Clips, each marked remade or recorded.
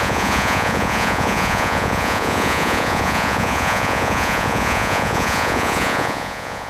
remade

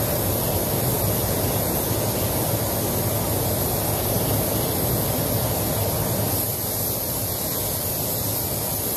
recorded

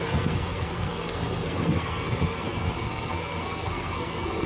remade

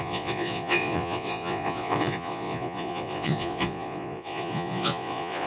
remade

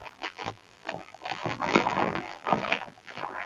remade